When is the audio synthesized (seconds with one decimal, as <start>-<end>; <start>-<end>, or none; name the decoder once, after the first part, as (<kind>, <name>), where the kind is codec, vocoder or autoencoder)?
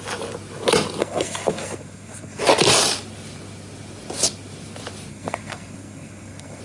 1.0-2.4 (codec, SNAC); 5.1-6.6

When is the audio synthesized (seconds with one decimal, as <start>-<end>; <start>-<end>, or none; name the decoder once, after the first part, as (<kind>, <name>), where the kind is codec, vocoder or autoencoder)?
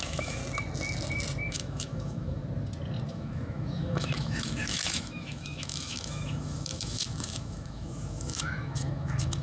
0.0-0.4 (autoencoder, DAC-VAE); 1.5-2.4; 3.1-9.4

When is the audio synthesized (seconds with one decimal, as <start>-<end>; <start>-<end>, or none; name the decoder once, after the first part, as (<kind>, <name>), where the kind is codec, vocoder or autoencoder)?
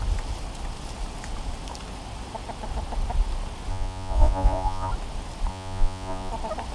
3.7-4.9 (vocoder, Vocos); 5.5-6.3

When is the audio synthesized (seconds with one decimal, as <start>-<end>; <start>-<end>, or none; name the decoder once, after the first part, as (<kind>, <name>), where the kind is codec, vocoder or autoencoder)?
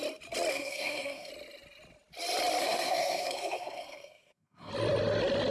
0.5-1.3 (codec, SNAC); 2.6-4.7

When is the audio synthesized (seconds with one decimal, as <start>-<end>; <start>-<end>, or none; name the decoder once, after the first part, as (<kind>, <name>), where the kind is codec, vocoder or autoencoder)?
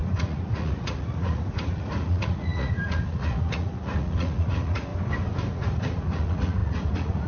0.0-4.9 (vocoder, Vocos); 5.5-7.3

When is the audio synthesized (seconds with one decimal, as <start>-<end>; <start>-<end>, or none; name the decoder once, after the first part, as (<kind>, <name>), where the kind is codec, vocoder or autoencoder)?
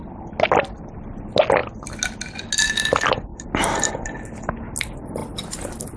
none